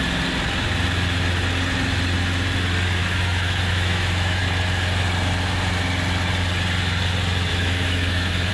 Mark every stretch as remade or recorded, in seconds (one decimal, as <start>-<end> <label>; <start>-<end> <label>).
0.0-3.0 recorded; 3.0-4.4 remade; 4.4-7.5 recorded; 7.5-8.5 remade